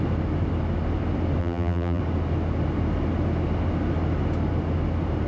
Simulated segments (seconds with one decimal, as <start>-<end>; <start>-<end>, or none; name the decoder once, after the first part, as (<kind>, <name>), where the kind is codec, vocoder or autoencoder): 1.4-2.0 (vocoder, BigVGAN v2)